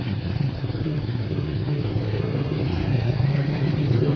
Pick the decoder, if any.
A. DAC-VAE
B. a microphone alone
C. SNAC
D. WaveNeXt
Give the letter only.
C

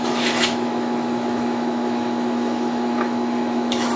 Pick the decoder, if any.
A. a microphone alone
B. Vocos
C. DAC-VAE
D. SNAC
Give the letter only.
C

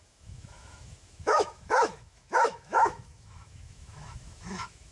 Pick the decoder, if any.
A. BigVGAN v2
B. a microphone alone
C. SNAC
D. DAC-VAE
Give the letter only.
D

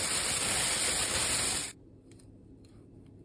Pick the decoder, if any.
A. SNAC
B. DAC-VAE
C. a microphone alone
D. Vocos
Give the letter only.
C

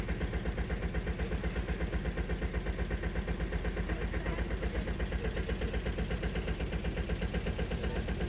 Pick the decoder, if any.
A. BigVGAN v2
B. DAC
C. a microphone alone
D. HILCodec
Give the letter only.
C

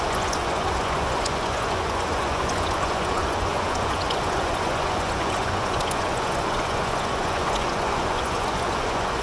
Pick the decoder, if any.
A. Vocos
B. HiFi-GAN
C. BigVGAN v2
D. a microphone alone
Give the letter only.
A